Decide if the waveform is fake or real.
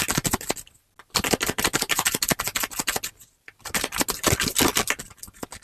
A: real